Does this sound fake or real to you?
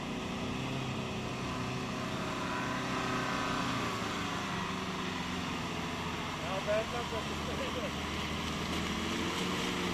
real